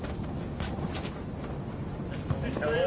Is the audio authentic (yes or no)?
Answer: yes